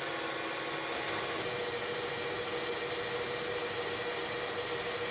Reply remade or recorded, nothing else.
recorded